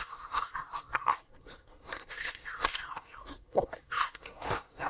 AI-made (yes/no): yes